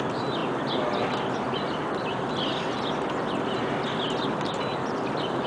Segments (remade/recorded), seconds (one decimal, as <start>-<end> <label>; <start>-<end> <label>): 0.0-5.5 recorded